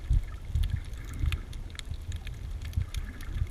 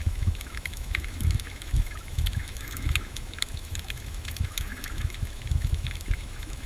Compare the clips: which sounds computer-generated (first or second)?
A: second